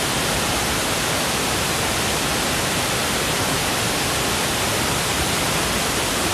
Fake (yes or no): no